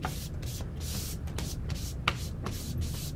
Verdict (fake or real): real